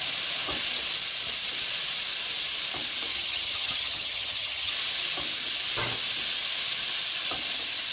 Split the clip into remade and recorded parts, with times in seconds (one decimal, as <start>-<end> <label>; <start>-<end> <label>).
0.0-3.1 recorded; 3.1-4.7 remade; 4.7-7.9 recorded